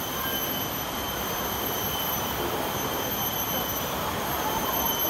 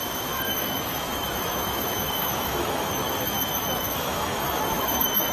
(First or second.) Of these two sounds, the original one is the first